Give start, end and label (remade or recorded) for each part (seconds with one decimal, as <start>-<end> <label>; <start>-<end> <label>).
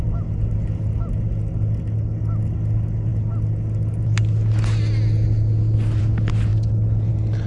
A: 0.0-7.5 recorded